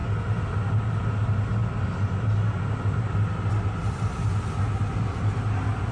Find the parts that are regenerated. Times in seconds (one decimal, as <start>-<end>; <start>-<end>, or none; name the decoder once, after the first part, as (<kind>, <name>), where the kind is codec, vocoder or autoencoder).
none